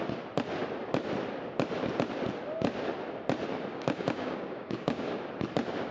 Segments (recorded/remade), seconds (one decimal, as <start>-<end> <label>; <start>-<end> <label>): 0.0-3.7 recorded; 3.7-5.2 remade; 5.2-5.9 recorded